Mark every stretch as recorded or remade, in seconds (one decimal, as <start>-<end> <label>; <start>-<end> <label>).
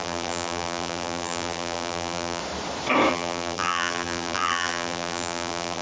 0.0-2.4 remade; 2.4-3.1 recorded; 3.1-5.8 remade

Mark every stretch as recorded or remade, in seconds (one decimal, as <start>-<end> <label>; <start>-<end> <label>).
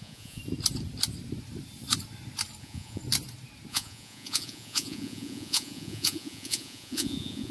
0.0-0.4 remade; 0.4-2.6 recorded; 2.6-3.0 remade; 3.0-3.7 recorded; 3.7-7.5 remade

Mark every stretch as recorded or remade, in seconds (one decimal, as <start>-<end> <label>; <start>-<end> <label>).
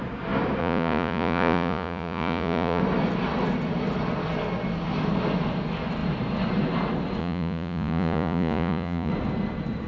0.0-0.6 recorded; 0.6-2.8 remade; 2.8-7.2 recorded; 7.2-9.1 remade; 9.1-9.9 recorded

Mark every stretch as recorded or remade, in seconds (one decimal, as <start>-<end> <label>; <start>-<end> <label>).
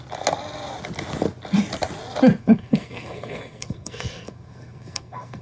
0.0-2.4 recorded; 2.4-5.4 remade